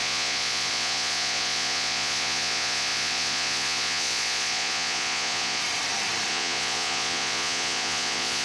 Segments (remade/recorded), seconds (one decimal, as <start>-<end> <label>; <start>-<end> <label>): 0.0-5.6 remade; 5.6-6.3 recorded; 6.3-8.4 remade